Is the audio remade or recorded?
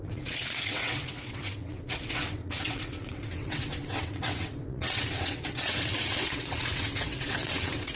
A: remade